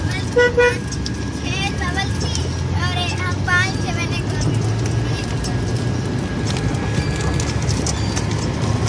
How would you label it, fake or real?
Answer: real